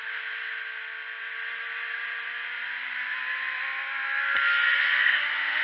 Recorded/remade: recorded